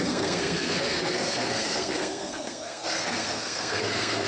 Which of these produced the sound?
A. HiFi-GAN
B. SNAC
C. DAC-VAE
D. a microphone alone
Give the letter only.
B